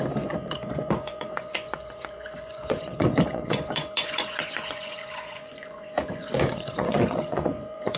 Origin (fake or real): fake